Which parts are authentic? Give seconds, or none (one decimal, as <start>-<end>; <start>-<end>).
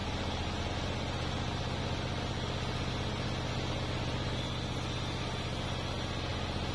0.0-6.7